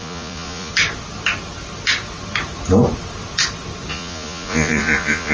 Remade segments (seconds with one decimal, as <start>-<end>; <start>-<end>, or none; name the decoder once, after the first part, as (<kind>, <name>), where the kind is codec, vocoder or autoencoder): 0.0-0.7 (vocoder, Vocos); 3.9-5.3